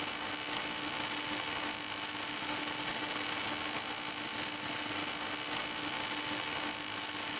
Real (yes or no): yes